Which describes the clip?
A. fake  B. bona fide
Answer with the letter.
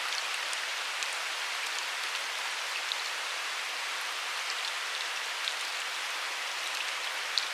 B